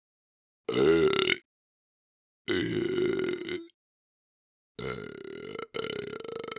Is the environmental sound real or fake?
real